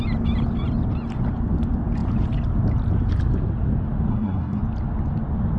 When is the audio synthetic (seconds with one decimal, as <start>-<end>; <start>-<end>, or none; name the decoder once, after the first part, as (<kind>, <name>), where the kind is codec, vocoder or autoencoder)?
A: 4.1-4.6 (codec, SNAC)